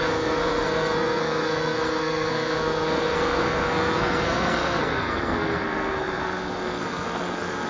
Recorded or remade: remade